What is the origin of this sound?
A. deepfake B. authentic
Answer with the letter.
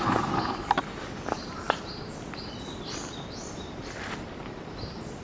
A